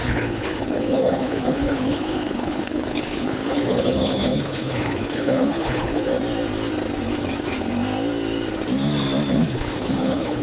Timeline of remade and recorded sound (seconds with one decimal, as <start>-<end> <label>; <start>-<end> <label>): 0.0-6.1 remade; 6.1-9.3 recorded; 9.3-10.4 remade